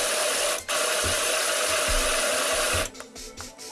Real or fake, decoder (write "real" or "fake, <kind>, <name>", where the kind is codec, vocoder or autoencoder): real